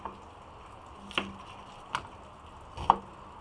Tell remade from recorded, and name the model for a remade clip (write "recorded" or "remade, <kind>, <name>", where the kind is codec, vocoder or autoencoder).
recorded